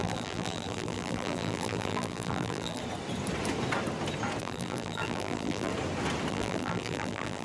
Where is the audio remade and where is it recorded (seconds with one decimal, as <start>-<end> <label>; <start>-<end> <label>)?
0.0-2.8 remade; 2.8-4.4 recorded; 4.4-5.7 remade; 5.7-6.3 recorded; 6.3-7.4 remade